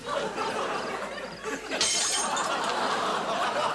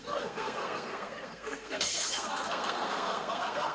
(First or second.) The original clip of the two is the first